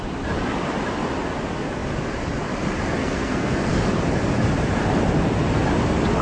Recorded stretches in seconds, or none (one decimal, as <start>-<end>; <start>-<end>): 0.0-3.0; 3.7-6.2